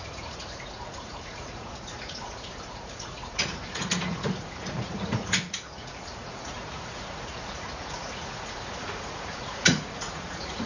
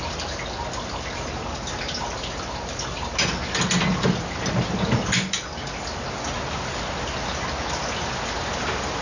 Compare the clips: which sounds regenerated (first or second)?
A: first